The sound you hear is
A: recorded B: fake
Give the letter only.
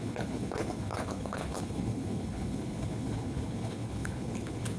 B